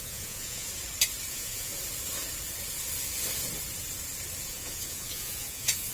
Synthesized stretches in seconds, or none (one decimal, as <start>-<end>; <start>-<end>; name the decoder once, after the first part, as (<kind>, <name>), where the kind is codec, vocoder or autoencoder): 0.0-0.7 (vocoder, Vocos); 1.3-1.8; 4.4-5.9